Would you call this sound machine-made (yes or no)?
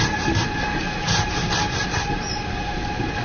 no